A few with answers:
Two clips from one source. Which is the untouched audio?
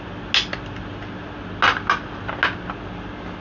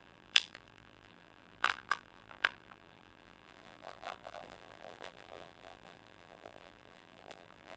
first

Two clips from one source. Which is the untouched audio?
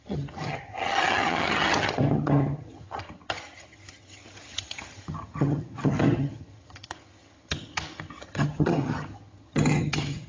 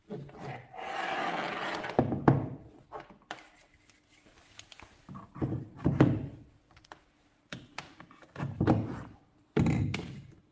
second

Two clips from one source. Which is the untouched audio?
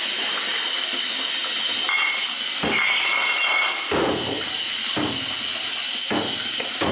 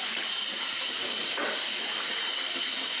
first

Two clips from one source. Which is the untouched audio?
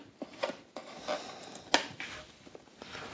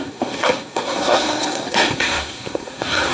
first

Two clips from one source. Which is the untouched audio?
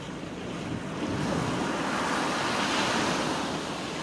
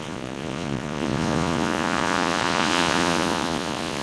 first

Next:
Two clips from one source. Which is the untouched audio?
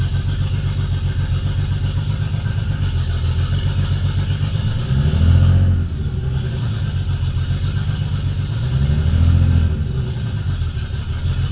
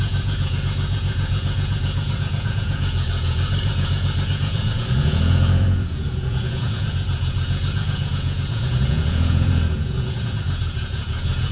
first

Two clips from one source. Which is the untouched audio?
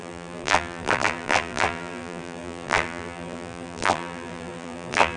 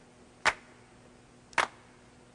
second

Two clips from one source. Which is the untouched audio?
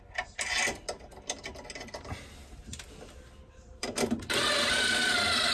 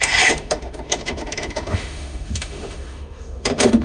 first